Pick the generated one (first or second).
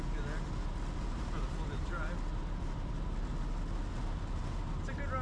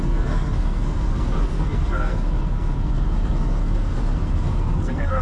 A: second